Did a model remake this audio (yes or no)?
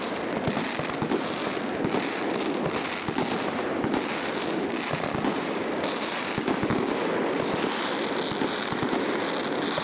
no